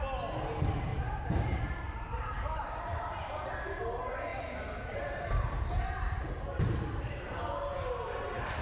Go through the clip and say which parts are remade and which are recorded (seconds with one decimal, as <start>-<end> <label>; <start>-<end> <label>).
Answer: 0.0-0.9 recorded; 0.9-3.5 remade; 3.5-4.3 recorded; 4.3-8.6 remade